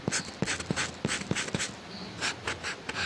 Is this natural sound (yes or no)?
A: yes